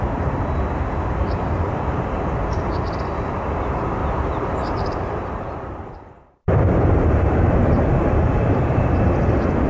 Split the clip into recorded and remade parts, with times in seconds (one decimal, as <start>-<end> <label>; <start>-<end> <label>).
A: 0.0-4.0 recorded; 4.0-8.9 remade; 8.9-9.7 recorded